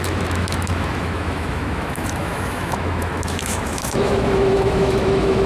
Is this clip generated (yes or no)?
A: yes